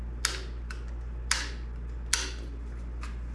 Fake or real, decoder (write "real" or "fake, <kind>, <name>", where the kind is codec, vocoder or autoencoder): real